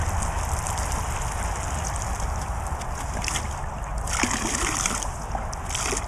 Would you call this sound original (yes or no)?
yes